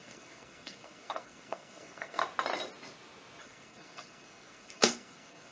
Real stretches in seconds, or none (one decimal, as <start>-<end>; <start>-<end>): 2.2-3.4